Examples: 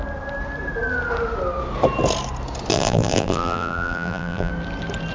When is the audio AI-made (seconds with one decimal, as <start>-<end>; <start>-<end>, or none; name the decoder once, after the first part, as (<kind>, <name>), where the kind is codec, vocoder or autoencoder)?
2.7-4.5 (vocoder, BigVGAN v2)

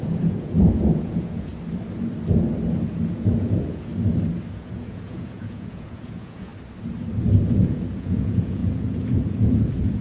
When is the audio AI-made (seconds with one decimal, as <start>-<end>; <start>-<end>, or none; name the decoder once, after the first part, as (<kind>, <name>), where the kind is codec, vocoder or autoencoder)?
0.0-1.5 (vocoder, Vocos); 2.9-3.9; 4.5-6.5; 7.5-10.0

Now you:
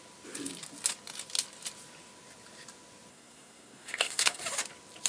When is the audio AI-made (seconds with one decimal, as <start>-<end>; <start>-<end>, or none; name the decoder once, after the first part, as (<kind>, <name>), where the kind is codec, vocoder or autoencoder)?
3.1-4.4 (codec, SNAC)

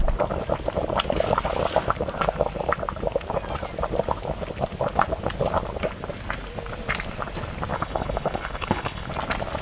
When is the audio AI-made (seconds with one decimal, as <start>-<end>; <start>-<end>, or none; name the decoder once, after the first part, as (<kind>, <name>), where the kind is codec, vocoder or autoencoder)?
7.7-9.1 (codec, HILCodec)

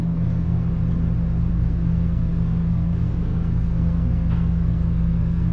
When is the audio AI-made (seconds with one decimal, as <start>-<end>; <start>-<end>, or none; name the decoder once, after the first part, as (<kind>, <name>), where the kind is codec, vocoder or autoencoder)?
0.0-0.7 (codec, SNAC); 1.5-5.5